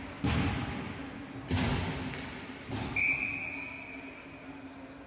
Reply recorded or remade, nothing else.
recorded